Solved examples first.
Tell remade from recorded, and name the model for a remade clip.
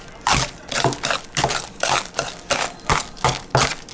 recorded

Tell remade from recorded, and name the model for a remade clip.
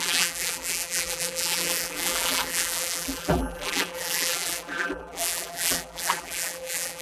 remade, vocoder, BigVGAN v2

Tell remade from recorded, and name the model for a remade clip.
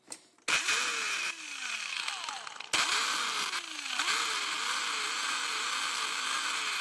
recorded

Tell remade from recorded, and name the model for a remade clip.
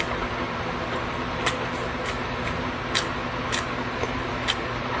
recorded